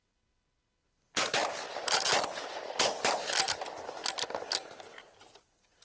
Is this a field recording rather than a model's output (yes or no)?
yes